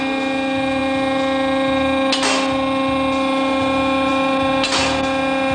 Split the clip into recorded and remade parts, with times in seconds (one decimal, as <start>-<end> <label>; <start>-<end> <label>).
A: 0.0-5.5 recorded